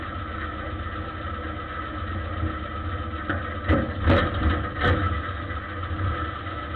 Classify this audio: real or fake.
real